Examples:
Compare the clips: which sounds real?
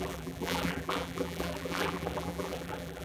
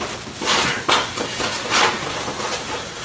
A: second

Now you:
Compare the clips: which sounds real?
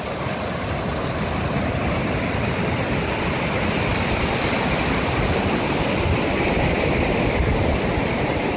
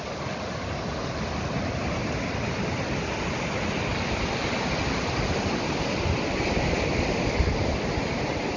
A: second